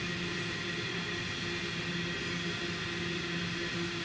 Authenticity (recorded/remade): recorded